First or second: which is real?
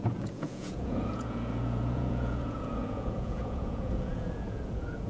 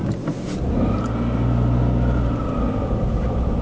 second